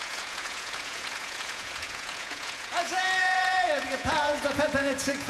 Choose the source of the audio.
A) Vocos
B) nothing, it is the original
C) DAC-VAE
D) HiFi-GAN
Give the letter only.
A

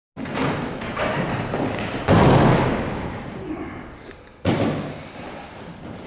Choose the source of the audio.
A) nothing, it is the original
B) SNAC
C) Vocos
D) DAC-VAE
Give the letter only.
A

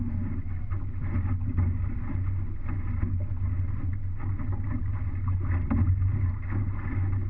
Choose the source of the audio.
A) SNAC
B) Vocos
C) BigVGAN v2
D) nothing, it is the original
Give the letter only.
D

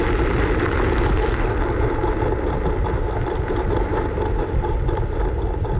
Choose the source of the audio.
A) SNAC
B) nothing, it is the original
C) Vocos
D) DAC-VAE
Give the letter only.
B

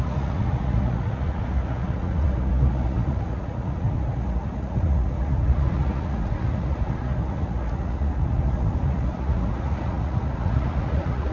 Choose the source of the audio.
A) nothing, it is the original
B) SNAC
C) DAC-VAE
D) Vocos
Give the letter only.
D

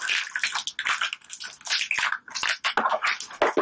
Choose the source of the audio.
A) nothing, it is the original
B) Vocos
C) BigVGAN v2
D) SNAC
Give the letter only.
A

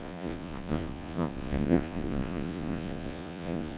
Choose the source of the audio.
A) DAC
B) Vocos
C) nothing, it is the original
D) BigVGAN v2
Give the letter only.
B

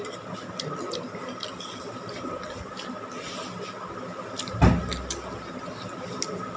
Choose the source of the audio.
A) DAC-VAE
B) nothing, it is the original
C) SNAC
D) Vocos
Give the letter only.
B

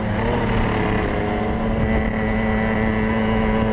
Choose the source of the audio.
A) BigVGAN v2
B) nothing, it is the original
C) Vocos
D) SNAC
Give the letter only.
B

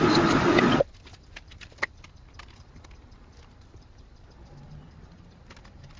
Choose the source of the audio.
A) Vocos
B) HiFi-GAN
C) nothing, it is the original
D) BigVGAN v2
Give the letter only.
C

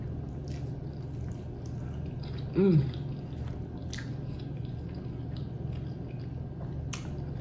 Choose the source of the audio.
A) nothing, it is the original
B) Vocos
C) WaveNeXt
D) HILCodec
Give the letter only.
A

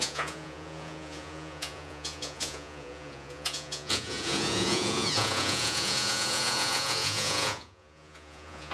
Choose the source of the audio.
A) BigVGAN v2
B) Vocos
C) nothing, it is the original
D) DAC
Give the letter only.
B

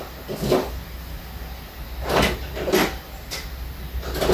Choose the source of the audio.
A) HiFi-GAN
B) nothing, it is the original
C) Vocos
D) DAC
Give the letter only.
B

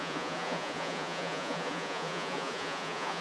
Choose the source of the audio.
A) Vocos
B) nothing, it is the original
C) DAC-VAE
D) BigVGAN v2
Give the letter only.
A